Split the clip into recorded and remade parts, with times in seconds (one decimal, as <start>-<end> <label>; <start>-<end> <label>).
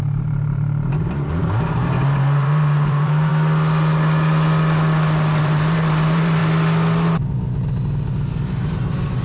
0.0-3.3 remade; 3.3-5.4 recorded; 5.4-6.4 remade; 6.4-8.6 recorded; 8.6-9.2 remade